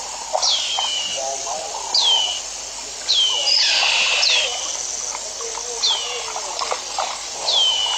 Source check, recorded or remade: recorded